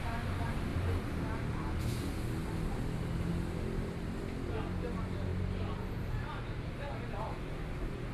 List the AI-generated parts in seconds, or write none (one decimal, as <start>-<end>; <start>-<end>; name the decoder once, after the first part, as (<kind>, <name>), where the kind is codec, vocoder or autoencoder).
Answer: none